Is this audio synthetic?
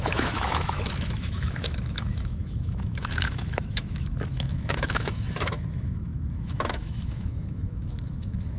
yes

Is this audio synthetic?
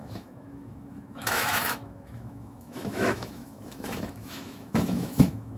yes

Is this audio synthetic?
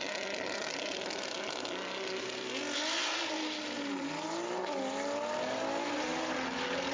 no